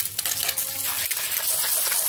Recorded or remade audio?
recorded